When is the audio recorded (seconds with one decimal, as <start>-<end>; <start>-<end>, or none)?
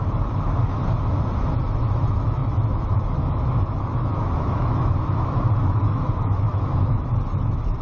0.8-1.8